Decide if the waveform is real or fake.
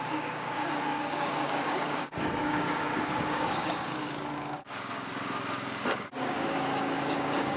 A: fake